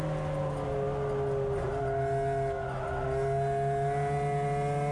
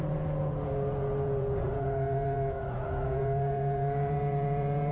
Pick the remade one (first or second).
second